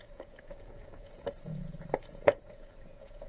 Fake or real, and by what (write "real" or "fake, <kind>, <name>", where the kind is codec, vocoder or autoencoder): fake, vocoder, Vocos